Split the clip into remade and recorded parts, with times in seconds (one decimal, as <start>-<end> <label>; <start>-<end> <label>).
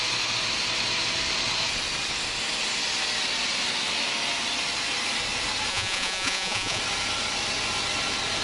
0.0-5.7 recorded; 5.7-6.8 remade; 6.8-8.4 recorded